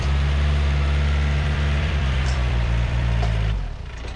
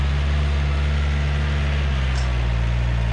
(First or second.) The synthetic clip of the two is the first